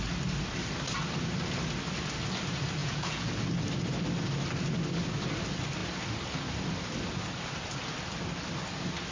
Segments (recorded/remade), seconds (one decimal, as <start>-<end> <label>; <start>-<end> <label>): 0.0-2.8 recorded; 2.8-3.3 remade; 3.3-9.1 recorded